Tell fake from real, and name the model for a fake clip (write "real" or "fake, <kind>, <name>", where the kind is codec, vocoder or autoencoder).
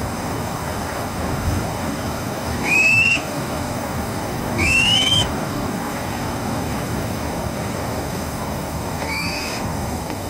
fake, codec, DAC